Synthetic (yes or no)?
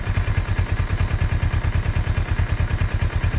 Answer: no